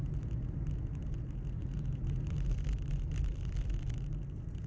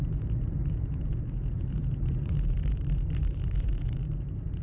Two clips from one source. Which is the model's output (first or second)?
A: second